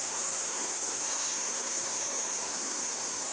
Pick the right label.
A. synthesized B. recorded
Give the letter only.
A